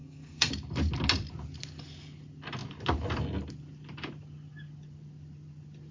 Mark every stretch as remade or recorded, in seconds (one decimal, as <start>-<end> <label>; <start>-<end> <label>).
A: 0.0-0.5 remade; 0.5-5.9 recorded